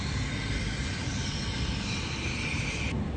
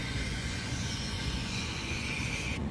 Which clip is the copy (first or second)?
second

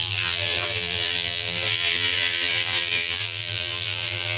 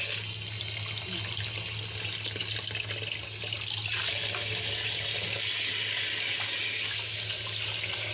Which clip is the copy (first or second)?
first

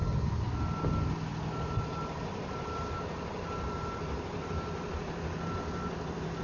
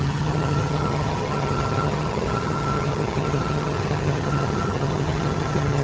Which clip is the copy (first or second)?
second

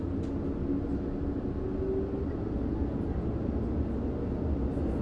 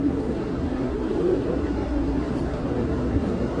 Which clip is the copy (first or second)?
second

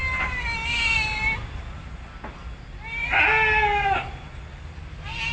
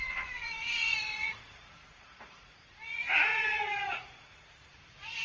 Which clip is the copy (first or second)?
second